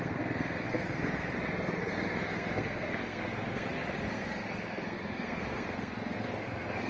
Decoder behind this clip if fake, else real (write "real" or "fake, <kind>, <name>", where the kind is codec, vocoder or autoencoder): fake, codec, SNAC